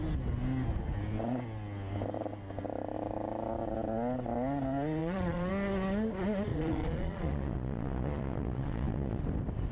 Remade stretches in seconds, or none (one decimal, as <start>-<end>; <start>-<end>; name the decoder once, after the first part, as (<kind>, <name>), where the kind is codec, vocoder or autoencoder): 5.0-5.5 (vocoder, Vocos); 6.5-9.2